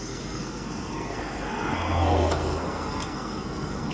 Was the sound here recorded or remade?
remade